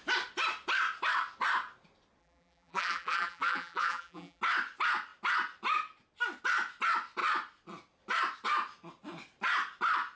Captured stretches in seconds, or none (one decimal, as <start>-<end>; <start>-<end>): 0.0-2.2; 4.4-10.2